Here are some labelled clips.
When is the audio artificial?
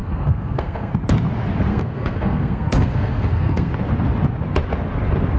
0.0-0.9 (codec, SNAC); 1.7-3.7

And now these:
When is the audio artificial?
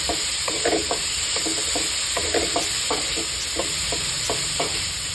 0.0-1.5 (vocoder, BigVGAN v2); 4.6-5.1